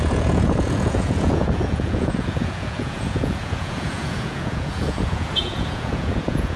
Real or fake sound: fake